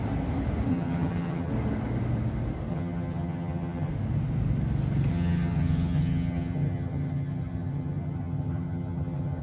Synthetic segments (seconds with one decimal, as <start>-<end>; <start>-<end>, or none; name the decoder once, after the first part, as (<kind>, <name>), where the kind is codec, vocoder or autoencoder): 0.7-1.5 (vocoder, HiFi-GAN); 2.7-3.9; 5.1-9.4